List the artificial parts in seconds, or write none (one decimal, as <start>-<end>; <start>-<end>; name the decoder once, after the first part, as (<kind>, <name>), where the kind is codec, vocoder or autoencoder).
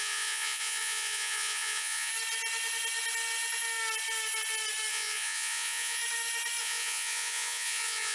0.0-2.1 (vocoder, Vocos); 4.9-6.0; 6.6-8.1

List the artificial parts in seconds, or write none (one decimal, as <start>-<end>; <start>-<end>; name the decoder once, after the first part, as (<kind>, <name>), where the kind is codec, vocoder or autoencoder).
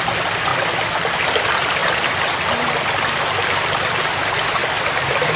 none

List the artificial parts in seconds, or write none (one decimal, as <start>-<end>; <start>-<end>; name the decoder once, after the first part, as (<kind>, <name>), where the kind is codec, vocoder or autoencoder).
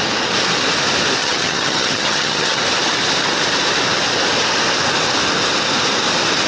1.2-2.6 (vocoder, HiFi-GAN)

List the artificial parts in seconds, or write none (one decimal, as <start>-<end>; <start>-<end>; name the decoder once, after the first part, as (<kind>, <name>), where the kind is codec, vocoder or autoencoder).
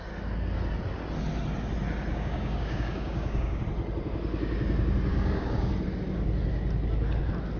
2.1-3.6 (codec, DAC); 5.1-5.7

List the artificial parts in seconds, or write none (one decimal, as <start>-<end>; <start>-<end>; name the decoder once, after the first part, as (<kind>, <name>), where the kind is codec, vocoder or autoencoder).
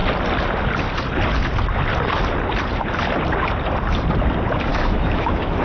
4.7-5.6 (autoencoder, DAC-VAE)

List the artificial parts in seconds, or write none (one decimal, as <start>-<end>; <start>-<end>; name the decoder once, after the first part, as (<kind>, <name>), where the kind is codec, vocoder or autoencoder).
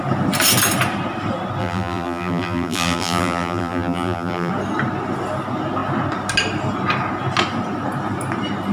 1.6-4.5 (vocoder, BigVGAN v2)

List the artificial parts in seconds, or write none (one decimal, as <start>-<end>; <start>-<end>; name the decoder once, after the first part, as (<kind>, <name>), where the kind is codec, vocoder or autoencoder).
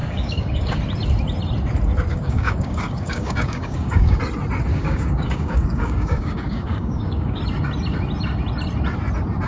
0.0-0.8 (codec, DAC); 2.1-4.2; 4.7-7.4